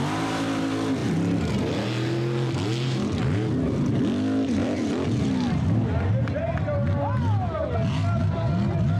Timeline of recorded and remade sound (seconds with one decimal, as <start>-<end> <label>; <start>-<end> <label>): 0.0-9.0 recorded